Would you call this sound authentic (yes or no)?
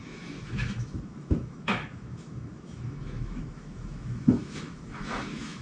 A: no